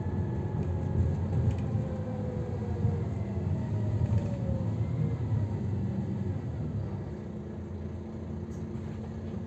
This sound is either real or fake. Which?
real